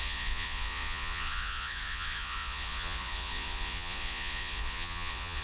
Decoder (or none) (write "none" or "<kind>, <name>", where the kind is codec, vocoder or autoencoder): vocoder, Vocos